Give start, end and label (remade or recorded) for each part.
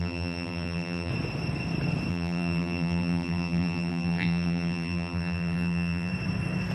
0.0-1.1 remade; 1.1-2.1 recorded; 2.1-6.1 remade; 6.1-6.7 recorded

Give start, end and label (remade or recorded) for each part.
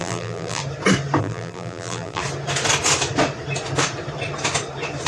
0.0-0.6 remade; 0.6-1.2 recorded; 1.2-2.2 remade; 2.2-5.1 recorded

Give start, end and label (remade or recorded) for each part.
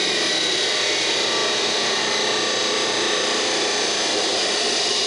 0.0-2.6 recorded; 2.6-4.2 remade; 4.2-5.1 recorded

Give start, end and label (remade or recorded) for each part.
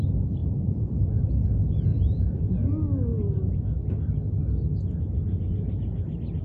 0.0-0.4 recorded; 0.4-1.5 remade; 1.5-1.9 recorded; 1.9-2.5 remade; 2.5-6.4 recorded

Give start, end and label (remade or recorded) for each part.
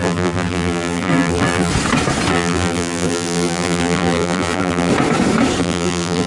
0.0-1.7 remade; 1.7-2.3 recorded; 2.3-4.9 remade; 4.9-5.6 recorded; 5.6-6.3 remade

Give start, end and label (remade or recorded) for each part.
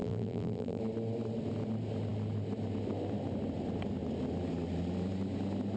0.0-0.8 remade; 0.8-5.8 recorded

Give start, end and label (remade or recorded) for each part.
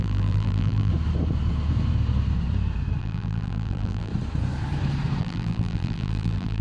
0.0-0.9 remade; 0.9-3.0 recorded; 3.0-4.1 remade; 4.1-5.2 recorded; 5.2-6.6 remade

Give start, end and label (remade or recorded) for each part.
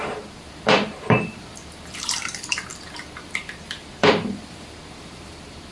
0.0-5.7 remade